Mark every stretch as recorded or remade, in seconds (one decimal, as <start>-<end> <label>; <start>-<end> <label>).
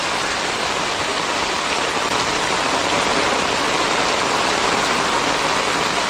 0.0-6.1 recorded